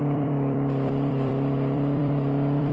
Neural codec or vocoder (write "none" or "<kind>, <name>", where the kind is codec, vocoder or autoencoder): vocoder, BigVGAN v2